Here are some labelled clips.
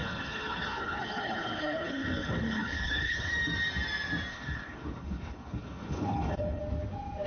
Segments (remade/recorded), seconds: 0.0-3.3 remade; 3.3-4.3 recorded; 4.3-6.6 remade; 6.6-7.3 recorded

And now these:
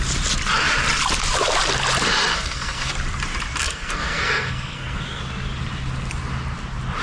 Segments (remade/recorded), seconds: 0.0-2.3 recorded; 2.3-2.9 remade; 2.9-3.6 recorded; 3.6-5.2 remade; 5.2-7.0 recorded

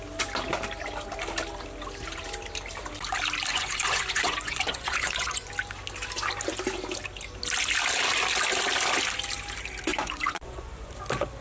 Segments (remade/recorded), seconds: 0.0-3.5 recorded; 3.5-5.5 remade; 5.5-9.9 recorded; 9.9-10.9 remade; 10.9-11.4 recorded

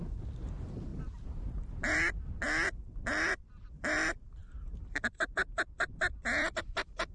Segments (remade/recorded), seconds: 0.0-7.1 recorded